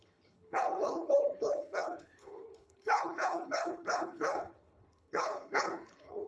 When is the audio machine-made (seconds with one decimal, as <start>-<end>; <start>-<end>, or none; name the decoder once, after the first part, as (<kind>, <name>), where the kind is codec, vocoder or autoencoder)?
0.0-6.3 (codec, HILCodec)